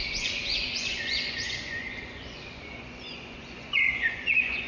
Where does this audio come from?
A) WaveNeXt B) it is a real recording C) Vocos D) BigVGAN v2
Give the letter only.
C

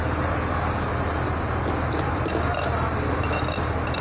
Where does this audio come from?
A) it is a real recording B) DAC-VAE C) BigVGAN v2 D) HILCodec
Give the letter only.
A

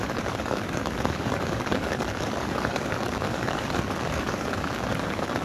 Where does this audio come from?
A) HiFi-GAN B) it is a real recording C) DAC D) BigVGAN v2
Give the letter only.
C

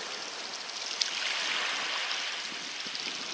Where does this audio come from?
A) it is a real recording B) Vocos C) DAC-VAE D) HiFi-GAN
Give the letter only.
A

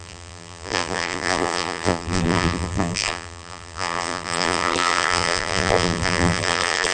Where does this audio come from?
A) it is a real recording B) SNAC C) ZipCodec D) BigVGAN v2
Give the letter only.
D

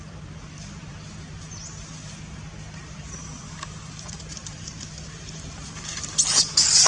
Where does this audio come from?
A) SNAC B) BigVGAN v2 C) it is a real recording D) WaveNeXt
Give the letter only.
B